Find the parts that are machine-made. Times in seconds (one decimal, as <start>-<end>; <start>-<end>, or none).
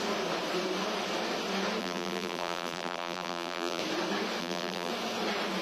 1.8-3.8; 4.4-4.9